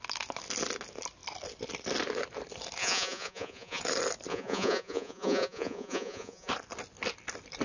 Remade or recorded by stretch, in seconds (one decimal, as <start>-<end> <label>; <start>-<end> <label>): 0.0-2.8 recorded; 2.8-3.8 remade; 3.8-4.3 recorded; 4.3-6.5 remade; 6.5-7.6 recorded

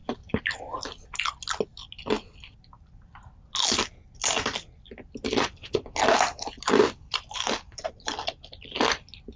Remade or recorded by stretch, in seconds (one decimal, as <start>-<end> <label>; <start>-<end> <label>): 0.0-9.4 recorded

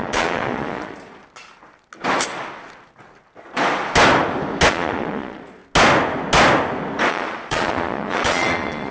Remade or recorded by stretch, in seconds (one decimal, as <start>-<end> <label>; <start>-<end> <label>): 0.0-1.2 remade; 1.2-4.7 recorded; 4.7-5.6 remade; 5.6-7.1 recorded; 7.1-8.9 remade

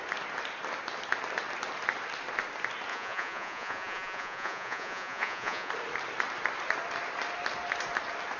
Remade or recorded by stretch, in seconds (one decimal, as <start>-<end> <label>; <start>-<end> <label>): 0.0-2.9 recorded; 2.9-5.7 remade; 5.7-8.4 recorded

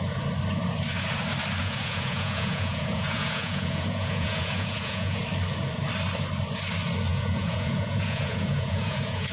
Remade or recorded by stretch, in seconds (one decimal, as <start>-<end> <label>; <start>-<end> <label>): 0.0-1.6 recorded; 1.6-5.2 remade; 5.2-7.1 recorded; 7.1-9.3 remade